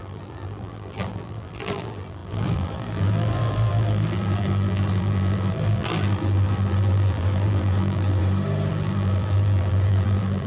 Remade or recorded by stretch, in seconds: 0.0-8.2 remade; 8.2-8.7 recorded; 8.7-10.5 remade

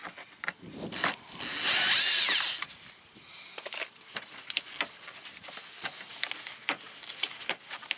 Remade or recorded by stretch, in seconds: 0.0-8.0 recorded

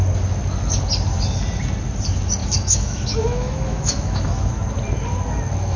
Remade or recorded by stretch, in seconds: 0.0-2.4 recorded; 2.4-4.6 remade; 4.6-5.8 recorded

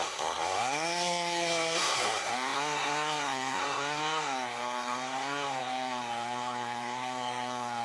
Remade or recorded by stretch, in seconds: 0.0-7.8 remade

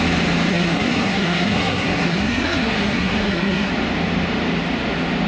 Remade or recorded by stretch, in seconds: 0.0-0.5 recorded; 0.5-3.7 remade; 3.7-5.3 recorded